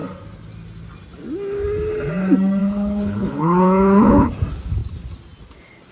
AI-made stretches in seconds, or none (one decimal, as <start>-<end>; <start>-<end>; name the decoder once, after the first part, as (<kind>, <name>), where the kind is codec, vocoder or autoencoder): 2.6-4.3 (codec, HILCodec)